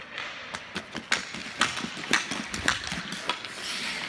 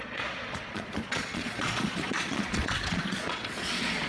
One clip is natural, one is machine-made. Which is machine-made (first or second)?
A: second